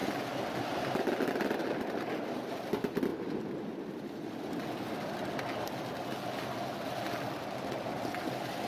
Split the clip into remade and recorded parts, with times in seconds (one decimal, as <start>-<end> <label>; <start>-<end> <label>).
0.0-8.7 recorded